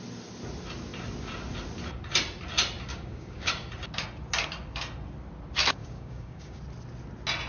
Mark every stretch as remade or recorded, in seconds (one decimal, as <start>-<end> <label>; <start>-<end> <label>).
0.0-2.9 recorded; 2.9-3.5 remade; 3.5-5.8 recorded; 5.8-6.6 remade; 6.6-7.5 recorded